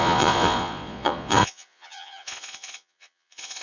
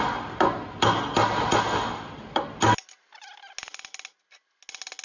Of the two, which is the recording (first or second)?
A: second